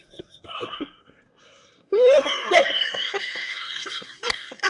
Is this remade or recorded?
remade